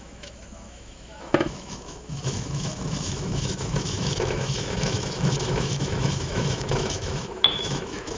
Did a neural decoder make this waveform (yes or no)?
yes